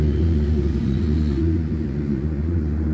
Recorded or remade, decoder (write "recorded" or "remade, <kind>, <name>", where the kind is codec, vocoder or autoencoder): remade, vocoder, Vocos